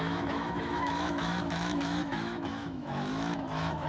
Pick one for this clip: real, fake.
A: fake